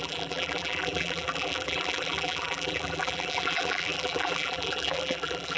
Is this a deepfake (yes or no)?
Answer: yes